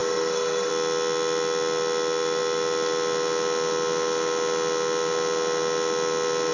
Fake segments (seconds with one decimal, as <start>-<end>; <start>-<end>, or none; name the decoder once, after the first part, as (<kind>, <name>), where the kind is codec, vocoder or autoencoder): 0.0-0.7 (codec, SNAC)